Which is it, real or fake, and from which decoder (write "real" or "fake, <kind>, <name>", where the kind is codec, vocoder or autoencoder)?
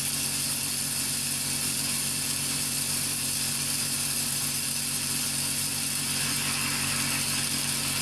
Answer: fake, vocoder, BigVGAN v2